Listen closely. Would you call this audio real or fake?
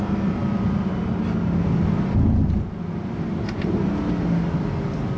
real